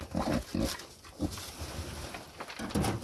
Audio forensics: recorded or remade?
recorded